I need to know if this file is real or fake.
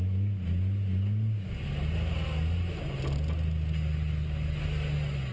real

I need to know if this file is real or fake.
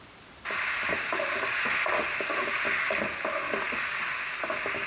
real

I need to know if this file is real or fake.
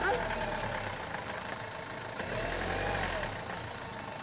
real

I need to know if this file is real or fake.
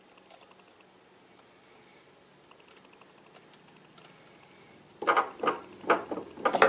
real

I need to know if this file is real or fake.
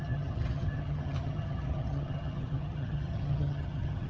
fake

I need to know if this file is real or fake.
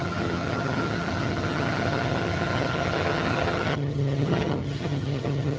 fake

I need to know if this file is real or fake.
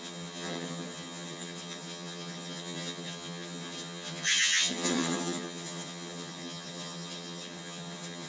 fake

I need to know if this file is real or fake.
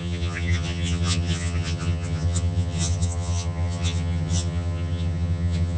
fake